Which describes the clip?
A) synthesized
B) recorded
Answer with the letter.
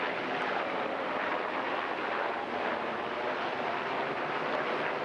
B